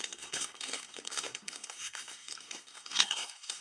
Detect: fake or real fake